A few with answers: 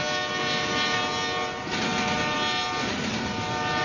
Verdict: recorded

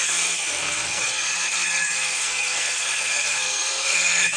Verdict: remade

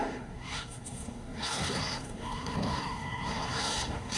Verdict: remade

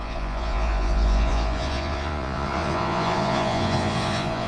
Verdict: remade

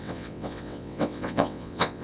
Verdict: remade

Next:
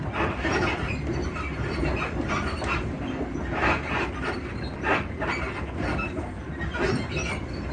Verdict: recorded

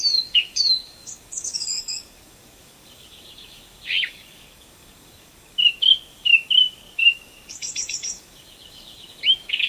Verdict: remade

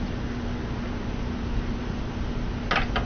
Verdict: recorded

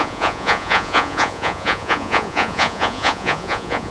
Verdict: remade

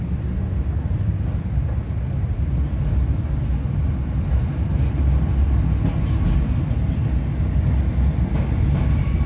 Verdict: recorded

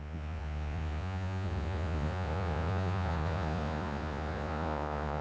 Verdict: remade